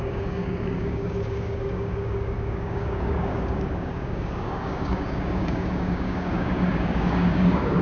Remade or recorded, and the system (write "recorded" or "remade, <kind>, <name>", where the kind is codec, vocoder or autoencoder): remade, codec, DAC